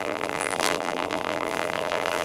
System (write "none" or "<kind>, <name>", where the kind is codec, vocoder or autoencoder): vocoder, BigVGAN v2